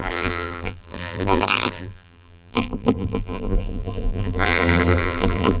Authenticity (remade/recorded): remade